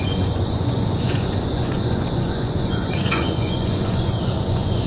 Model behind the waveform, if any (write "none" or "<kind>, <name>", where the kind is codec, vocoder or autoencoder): vocoder, Vocos